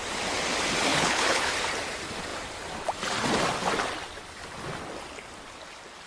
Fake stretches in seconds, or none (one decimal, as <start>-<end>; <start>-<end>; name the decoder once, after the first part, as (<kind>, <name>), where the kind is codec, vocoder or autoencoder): 0.9-1.5 (codec, HILCodec)